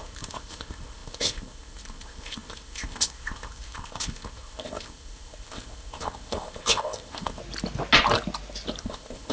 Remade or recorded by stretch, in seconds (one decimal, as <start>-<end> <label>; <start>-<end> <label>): 0.0-7.4 remade; 7.4-8.8 recorded; 8.8-9.3 remade

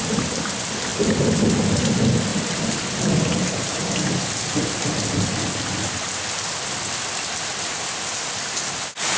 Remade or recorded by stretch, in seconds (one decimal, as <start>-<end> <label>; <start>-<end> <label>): 0.0-9.2 recorded

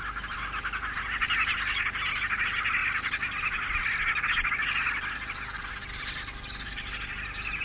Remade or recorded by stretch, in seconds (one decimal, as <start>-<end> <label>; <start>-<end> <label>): 0.0-7.6 recorded

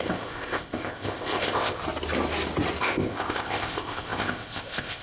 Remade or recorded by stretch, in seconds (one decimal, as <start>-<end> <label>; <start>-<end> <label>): 0.0-1.8 remade; 1.8-2.8 recorded; 2.8-5.0 remade

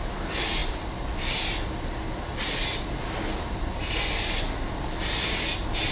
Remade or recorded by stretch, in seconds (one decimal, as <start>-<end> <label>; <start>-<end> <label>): 0.0-5.9 recorded

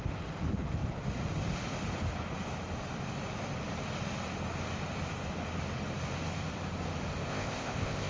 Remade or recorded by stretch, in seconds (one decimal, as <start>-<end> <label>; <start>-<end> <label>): 0.0-7.3 recorded; 7.3-8.1 remade